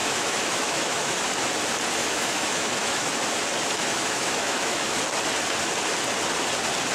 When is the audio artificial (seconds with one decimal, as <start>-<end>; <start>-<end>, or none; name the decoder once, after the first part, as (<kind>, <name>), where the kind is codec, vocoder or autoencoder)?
0.0-1.2 (autoencoder, DAC-VAE); 2.0-3.2; 3.8-5.0